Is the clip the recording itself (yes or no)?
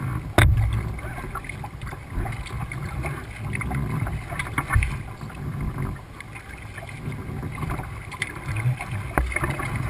yes